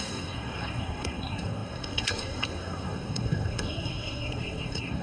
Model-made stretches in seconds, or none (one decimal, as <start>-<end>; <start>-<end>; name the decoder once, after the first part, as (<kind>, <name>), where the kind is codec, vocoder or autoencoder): 0.0-5.0 (codec, SNAC)